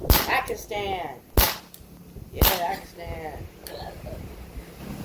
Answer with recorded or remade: recorded